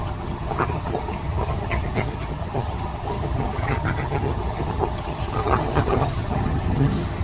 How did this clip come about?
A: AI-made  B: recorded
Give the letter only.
A